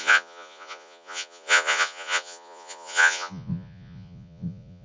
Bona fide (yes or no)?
no